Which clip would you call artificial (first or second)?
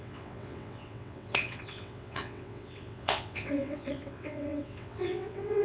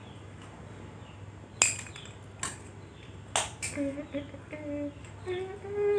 first